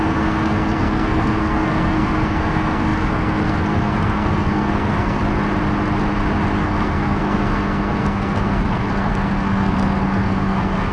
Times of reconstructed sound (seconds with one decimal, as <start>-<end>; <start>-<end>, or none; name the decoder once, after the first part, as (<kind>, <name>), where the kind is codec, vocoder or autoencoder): 0.0-5.2 (codec, SNAC); 6.6-10.9

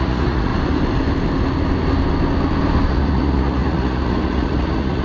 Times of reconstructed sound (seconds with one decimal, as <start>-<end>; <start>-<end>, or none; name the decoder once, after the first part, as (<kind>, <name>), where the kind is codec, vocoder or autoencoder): 0.0-0.5 (vocoder, Vocos); 2.9-5.0

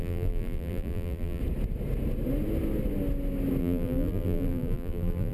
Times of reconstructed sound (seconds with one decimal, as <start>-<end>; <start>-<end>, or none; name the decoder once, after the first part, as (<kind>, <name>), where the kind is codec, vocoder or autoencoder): 0.0-1.4 (vocoder, BigVGAN v2); 3.6-5.3

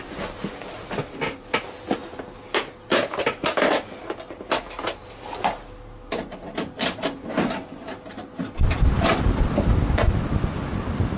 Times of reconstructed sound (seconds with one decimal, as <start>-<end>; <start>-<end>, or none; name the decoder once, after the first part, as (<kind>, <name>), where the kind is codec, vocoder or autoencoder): none

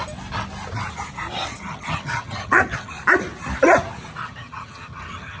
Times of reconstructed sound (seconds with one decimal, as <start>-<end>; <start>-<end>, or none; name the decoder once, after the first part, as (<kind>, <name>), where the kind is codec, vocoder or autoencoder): 1.5-2.9 (vocoder, HiFi-GAN); 4.2-5.4

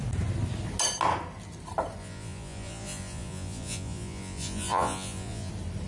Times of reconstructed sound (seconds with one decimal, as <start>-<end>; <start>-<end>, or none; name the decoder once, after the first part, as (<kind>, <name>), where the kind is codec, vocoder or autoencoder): 2.0-5.5 (vocoder, Vocos)

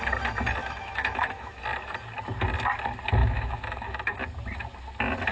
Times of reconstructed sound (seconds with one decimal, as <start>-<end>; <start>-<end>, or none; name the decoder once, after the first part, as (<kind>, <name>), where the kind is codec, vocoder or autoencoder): 0.6-1.6 (autoencoder, DAC-VAE); 3.2-4.2